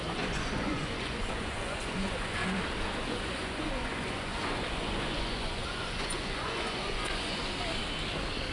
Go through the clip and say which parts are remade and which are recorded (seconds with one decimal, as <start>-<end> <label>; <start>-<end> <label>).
0.0-2.4 remade; 2.4-3.0 recorded; 3.0-7.4 remade; 7.4-8.5 recorded